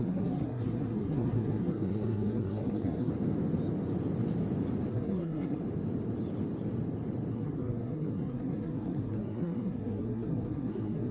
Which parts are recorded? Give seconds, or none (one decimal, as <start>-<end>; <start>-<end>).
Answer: 3.1-4.9; 5.6-7.3